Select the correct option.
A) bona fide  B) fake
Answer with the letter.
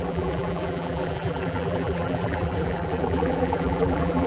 B